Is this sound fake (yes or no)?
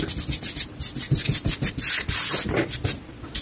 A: no